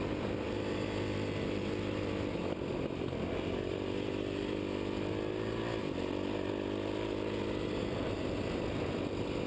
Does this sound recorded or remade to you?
recorded